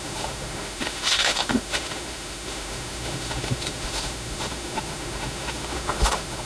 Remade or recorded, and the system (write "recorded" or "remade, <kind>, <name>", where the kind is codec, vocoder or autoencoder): remade, autoencoder, DAC-VAE